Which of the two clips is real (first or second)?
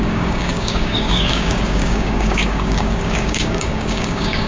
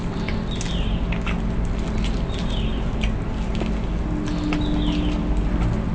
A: second